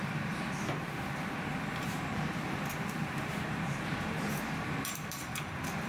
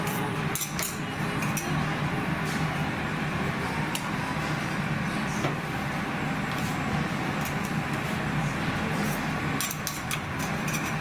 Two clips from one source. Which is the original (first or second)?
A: second